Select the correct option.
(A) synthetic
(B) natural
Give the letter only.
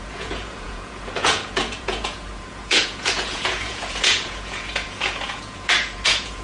A